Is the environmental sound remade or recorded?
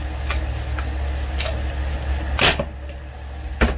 recorded